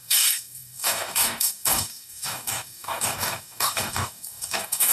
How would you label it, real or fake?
fake